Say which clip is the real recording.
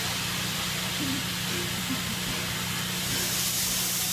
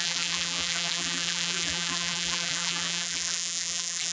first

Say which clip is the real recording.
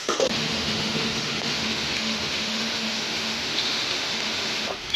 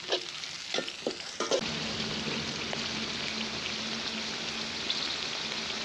second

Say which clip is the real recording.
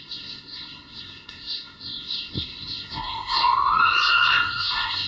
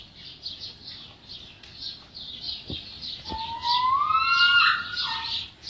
second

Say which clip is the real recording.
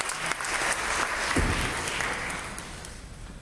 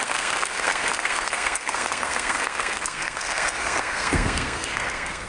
first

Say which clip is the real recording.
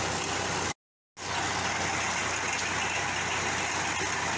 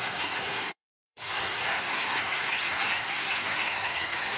first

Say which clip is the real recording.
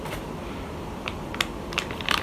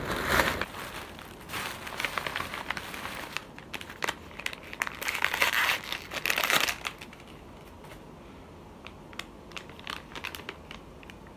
second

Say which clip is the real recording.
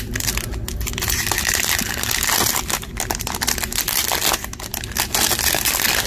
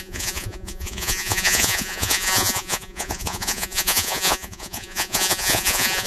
first